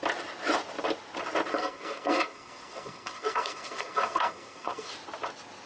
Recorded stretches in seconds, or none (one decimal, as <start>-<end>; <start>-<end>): 0.0-1.5; 4.9-5.7